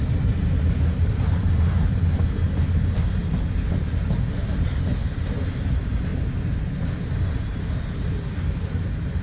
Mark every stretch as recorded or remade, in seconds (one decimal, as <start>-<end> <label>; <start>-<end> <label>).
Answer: 0.0-9.2 recorded